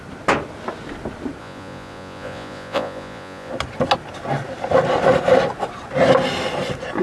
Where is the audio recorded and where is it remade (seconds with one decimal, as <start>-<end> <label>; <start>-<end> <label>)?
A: 0.0-1.4 recorded; 1.4-3.5 remade; 3.5-7.0 recorded

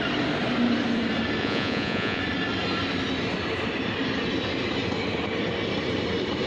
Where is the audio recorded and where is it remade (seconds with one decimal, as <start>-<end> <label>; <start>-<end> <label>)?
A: 0.0-1.4 recorded; 1.4-2.2 remade; 2.2-6.5 recorded

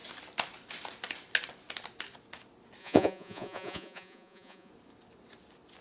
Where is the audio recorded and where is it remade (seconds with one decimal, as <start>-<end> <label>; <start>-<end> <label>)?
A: 0.0-2.8 recorded; 2.8-4.7 remade; 4.7-5.8 recorded

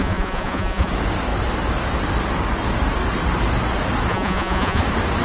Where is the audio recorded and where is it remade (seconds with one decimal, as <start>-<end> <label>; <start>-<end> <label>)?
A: 0.0-0.9 remade; 0.9-4.1 recorded; 4.1-4.8 remade; 4.8-5.2 recorded

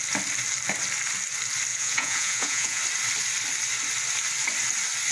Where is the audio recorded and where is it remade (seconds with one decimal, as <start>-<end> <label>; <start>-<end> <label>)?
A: 0.0-1.7 recorded; 1.7-2.8 remade; 2.8-5.1 recorded

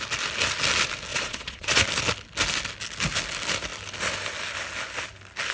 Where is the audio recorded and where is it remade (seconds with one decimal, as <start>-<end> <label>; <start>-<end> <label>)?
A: 0.0-1.1 recorded; 1.1-1.8 remade; 1.8-5.5 recorded